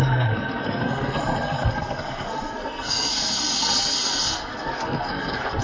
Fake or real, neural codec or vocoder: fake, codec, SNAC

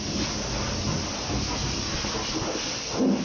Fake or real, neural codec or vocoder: real